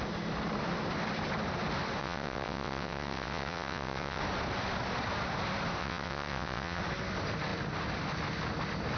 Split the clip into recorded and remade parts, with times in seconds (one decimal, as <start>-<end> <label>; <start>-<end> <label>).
0.0-2.0 recorded; 2.0-4.2 remade; 4.2-5.8 recorded; 5.8-6.8 remade; 6.8-9.0 recorded